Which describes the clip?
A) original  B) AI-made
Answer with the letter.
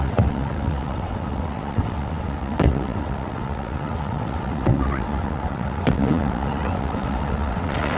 B